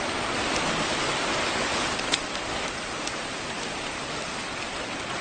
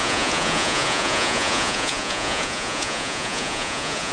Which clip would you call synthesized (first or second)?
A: second